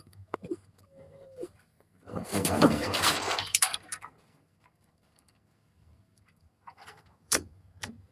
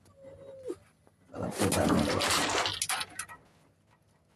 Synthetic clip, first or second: first